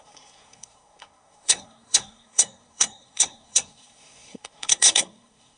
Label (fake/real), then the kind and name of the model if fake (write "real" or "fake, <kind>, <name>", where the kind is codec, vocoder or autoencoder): fake, codec, SNAC